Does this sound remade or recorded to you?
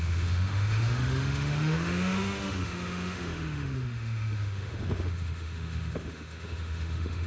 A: remade